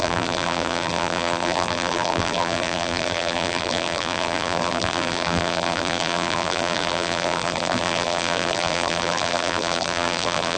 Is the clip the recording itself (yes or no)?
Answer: no